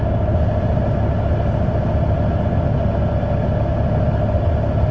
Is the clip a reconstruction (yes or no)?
no